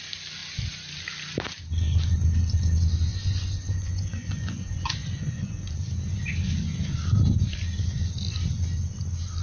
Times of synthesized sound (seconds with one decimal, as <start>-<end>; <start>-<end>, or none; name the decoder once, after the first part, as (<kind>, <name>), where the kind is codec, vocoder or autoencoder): 3.1-5.7 (vocoder, Vocos)